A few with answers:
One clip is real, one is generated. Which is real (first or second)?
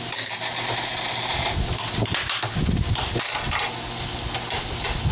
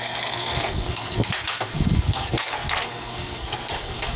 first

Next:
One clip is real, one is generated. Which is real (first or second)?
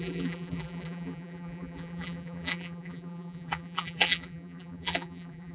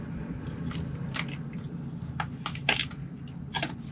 second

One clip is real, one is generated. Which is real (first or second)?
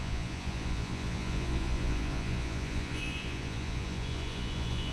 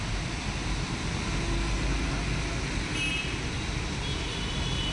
second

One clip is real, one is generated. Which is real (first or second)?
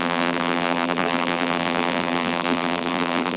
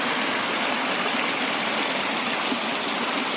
second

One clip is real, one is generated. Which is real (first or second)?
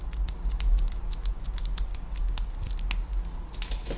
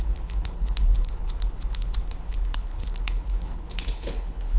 first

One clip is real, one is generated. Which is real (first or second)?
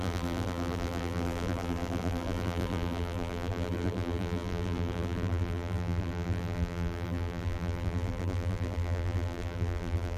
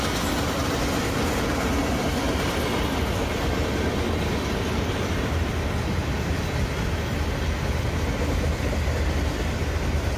second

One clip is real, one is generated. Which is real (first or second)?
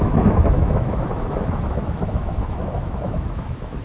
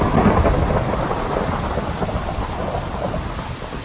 second